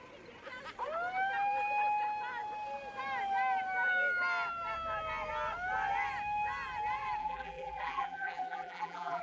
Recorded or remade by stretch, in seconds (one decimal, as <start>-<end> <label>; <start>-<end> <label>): 0.0-7.2 recorded; 7.2-9.2 remade